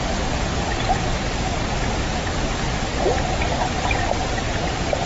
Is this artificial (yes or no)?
no